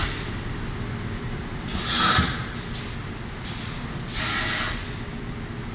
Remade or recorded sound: recorded